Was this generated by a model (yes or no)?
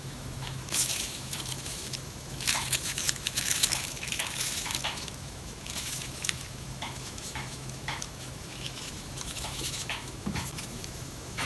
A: yes